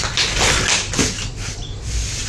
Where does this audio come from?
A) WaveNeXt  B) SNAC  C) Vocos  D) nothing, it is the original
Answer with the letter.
D